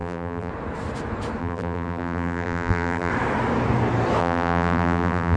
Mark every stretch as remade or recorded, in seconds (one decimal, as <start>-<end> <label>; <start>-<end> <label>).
0.0-0.5 remade; 0.5-1.4 recorded; 1.4-3.1 remade; 3.1-4.2 recorded; 4.2-5.4 remade